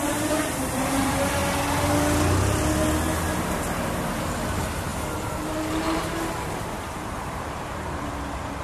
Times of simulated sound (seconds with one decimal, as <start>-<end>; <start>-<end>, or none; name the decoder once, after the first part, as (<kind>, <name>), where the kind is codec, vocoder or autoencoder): 0.0-1.4 (vocoder, BigVGAN v2); 4.1-8.6